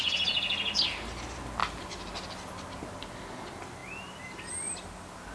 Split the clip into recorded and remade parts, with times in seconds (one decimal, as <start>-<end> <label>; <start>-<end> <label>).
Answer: 0.0-5.3 recorded